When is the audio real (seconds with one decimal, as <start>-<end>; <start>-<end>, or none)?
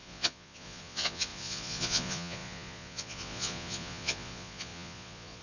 none